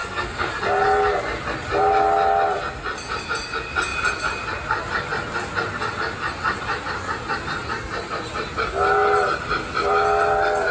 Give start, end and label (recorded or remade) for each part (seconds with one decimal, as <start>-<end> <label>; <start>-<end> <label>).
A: 0.0-0.5 remade; 0.5-10.7 recorded